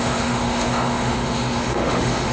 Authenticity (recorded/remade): remade